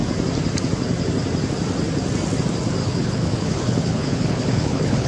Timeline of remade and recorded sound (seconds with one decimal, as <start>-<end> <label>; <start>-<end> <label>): 0.0-2.8 recorded; 2.8-5.1 remade